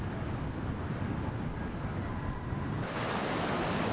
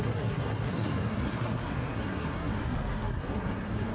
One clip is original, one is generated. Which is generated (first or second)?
second